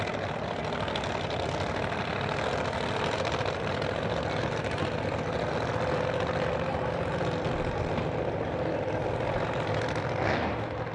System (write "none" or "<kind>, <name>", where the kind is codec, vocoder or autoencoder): none